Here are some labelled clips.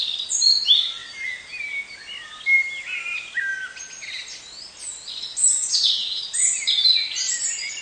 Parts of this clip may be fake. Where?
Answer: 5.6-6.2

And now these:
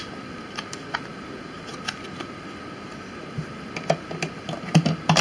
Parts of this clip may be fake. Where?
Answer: none

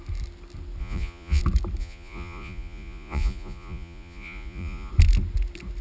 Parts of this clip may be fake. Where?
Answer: 0.8-1.4; 1.8-4.9

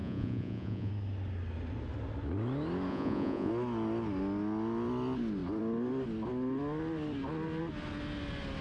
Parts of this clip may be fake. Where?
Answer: 0.0-0.9; 2.9-3.5

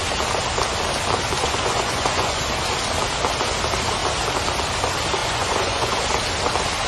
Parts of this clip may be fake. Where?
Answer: 1.4-2.4; 5.2-6.0

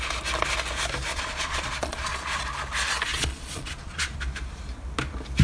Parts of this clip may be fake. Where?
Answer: 1.1-2.4; 3.1-4.1

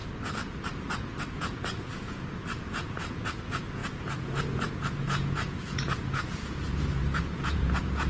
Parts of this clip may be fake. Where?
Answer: 0.9-8.1

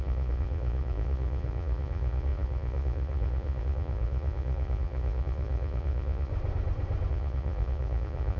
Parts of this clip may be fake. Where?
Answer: 0.0-6.3; 7.1-8.4